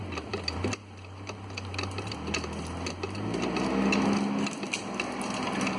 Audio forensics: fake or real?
real